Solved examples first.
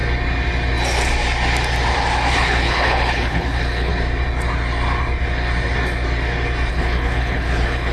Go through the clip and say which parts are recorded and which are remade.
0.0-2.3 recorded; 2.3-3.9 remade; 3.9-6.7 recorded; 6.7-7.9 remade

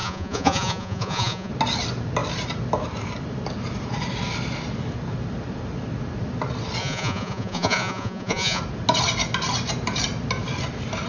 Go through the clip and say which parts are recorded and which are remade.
0.0-1.5 remade; 1.5-6.8 recorded; 6.8-8.6 remade; 8.6-11.1 recorded

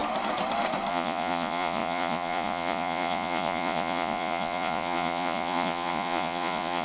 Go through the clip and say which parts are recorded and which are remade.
0.0-0.9 recorded; 0.9-6.8 remade

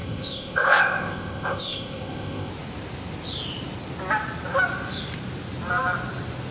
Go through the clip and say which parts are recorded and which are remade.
0.0-2.5 remade; 2.5-6.5 recorded

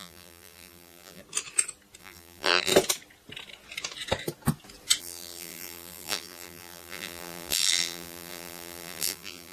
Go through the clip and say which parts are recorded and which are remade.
0.0-1.2 remade; 1.2-2.0 recorded; 2.0-2.7 remade; 2.7-5.0 recorded; 5.0-9.5 remade

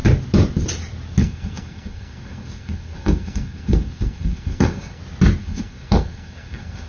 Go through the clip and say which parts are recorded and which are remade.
0.0-1.2 recorded; 1.2-5.0 remade; 5.0-5.4 recorded; 5.4-6.9 remade